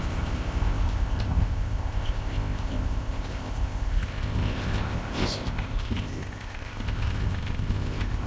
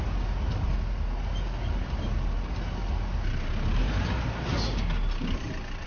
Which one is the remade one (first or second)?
first